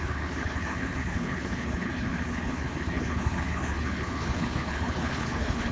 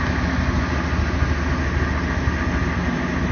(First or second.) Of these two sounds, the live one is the second